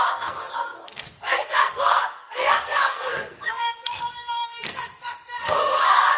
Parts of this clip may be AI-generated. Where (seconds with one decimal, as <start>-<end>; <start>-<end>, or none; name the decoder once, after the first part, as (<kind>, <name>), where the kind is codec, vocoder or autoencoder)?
0.0-6.2 (codec, SNAC)